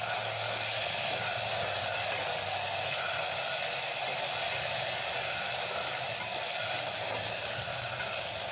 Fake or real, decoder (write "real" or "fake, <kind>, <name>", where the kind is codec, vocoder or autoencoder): real